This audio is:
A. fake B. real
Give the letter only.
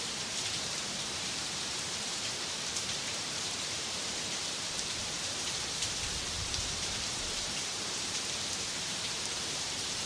A